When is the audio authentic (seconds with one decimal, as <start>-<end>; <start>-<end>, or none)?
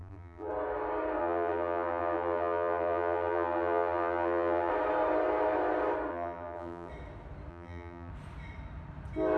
0.5-1.2; 4.7-6.1; 6.9-7.5; 8.1-9.4